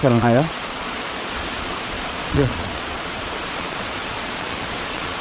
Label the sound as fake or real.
fake